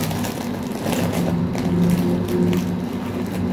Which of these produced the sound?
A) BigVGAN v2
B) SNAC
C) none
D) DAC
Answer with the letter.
C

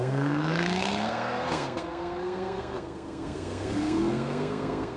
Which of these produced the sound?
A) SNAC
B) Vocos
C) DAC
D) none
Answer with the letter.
A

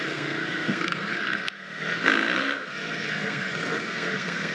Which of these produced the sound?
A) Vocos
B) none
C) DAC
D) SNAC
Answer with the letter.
D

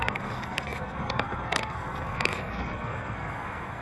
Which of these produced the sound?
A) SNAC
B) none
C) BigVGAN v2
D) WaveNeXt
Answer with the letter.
A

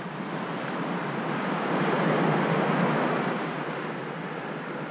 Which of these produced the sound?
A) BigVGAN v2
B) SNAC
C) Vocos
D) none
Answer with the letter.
D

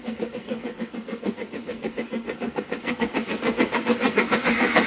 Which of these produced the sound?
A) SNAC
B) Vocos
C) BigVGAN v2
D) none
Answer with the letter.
A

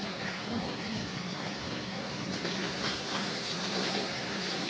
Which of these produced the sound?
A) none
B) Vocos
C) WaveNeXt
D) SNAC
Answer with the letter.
D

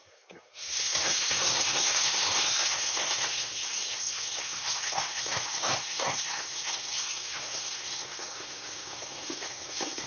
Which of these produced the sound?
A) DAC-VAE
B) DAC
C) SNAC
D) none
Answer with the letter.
C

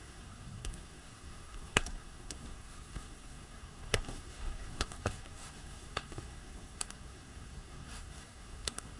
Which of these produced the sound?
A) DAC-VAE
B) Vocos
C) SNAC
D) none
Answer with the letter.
C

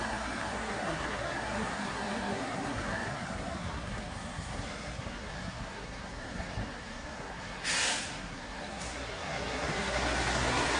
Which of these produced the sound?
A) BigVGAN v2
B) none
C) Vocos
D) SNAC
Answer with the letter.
D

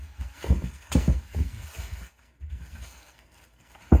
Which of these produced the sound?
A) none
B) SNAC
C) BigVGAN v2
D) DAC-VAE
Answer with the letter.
B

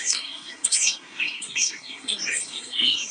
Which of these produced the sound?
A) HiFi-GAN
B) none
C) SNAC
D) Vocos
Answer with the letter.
C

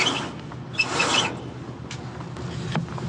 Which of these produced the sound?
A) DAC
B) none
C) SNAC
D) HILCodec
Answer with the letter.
B